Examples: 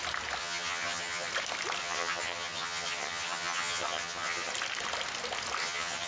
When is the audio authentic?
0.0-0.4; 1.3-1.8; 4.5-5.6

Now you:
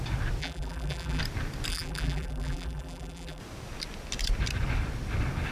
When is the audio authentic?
0.0-0.4; 1.2-1.7; 3.4-5.5